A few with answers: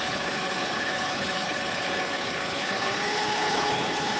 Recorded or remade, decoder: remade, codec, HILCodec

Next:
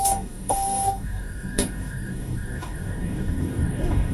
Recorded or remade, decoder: remade, codec, DAC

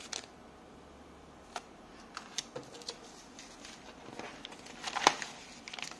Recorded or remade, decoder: recorded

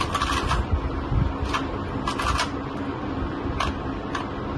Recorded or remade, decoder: recorded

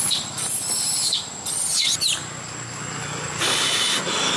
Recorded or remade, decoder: recorded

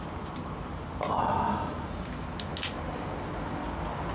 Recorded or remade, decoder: recorded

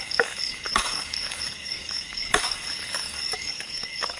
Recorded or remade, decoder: remade, codec, DAC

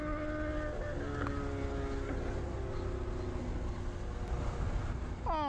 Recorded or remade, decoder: recorded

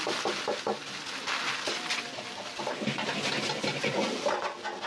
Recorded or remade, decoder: recorded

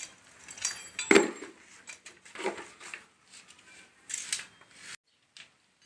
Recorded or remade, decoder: recorded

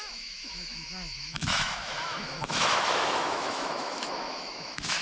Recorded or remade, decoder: remade, autoencoder, DAC-VAE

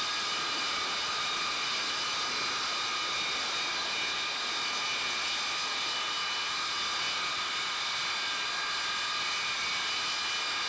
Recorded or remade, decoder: recorded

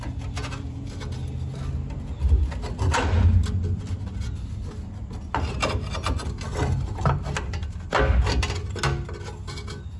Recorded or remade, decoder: recorded